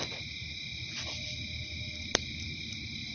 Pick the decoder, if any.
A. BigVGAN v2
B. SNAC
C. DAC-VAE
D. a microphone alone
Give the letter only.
D